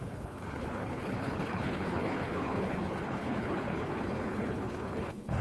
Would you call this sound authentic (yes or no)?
no